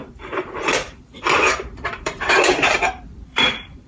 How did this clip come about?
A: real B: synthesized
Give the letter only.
B